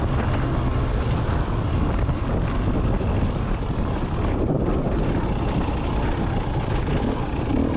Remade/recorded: recorded